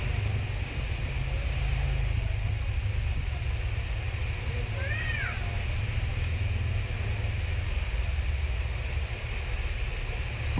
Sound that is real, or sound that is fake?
real